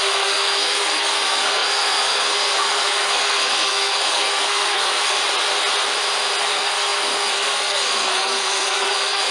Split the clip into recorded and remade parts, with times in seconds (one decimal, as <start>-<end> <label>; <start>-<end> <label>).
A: 0.0-5.2 remade; 5.2-6.4 recorded; 6.4-9.3 remade